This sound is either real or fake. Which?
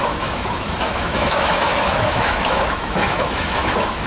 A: fake